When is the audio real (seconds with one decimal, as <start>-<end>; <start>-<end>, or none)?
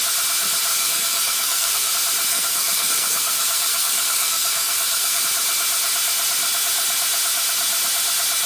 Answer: 0.0-0.7; 1.9-2.3; 5.2-8.5